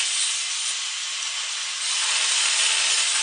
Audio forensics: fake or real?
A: real